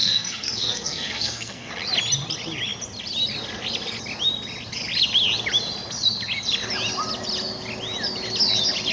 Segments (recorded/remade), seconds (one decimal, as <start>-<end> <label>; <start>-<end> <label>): 0.0-1.7 remade; 1.7-8.9 recorded